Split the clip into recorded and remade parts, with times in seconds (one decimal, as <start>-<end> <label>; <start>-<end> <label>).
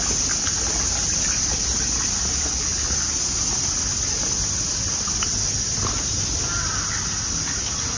0.0-8.0 recorded